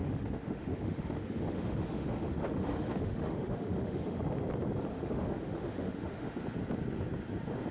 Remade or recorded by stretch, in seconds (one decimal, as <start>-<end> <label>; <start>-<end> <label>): 0.0-4.2 remade; 4.2-4.9 recorded; 4.9-6.4 remade; 6.4-7.7 recorded